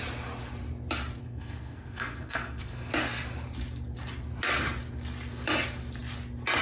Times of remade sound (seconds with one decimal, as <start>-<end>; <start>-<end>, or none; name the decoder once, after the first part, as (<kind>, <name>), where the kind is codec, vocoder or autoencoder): 1.2-2.9 (codec, SNAC)